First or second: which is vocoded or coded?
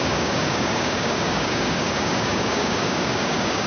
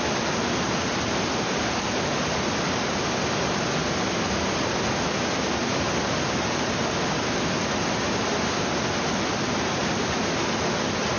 first